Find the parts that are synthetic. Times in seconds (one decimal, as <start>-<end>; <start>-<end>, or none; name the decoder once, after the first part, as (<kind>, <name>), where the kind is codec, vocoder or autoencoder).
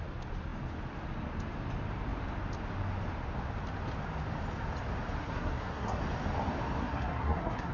5.2-6.0 (codec, SNAC); 6.8-7.7